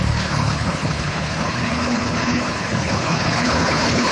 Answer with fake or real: fake